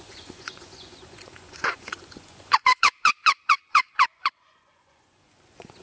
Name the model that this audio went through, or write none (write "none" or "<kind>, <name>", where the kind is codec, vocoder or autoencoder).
vocoder, Vocos